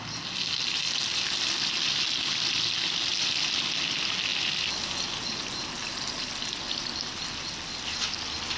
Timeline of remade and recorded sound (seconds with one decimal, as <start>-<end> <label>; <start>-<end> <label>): 0.0-8.6 recorded